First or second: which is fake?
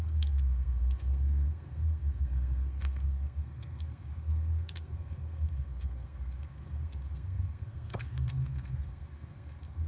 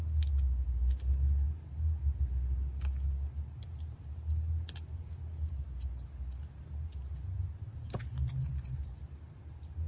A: first